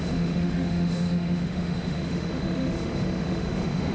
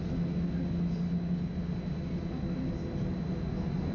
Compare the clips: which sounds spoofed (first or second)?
first